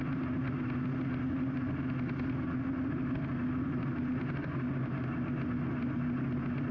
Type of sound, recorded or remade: recorded